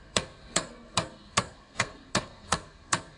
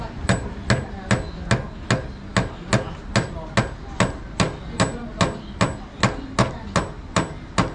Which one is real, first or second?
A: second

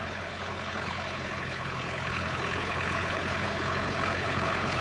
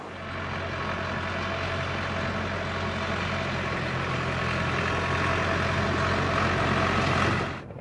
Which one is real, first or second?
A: second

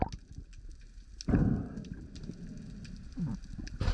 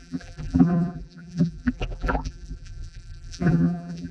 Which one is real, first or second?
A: first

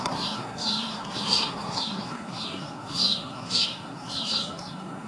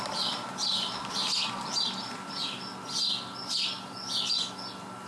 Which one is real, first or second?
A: second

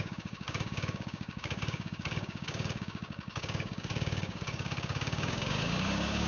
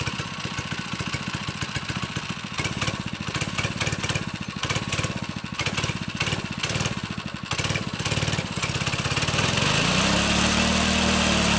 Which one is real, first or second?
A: second